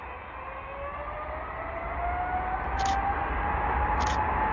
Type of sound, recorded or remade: recorded